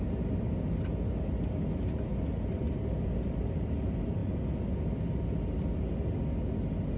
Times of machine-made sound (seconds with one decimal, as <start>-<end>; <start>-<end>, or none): none